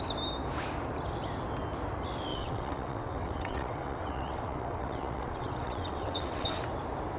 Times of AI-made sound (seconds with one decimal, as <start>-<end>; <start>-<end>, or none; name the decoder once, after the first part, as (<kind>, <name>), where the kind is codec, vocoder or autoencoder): 2.3-6.6 (vocoder, WaveNeXt)